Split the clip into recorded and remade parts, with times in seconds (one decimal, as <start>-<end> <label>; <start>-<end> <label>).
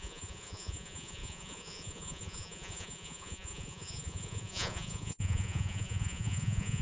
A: 0.0-6.8 remade